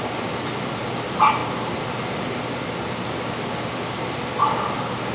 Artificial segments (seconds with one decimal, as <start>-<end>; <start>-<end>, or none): none